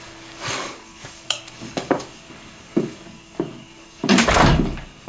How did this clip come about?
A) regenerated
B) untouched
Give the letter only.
A